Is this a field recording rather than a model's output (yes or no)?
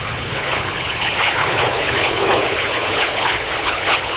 no